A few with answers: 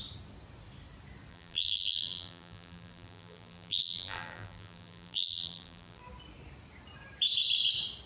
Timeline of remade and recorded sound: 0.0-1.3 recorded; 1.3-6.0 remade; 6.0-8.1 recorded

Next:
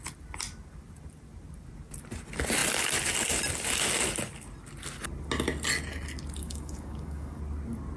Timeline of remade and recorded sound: 0.0-6.4 recorded; 6.4-7.4 remade; 7.4-8.0 recorded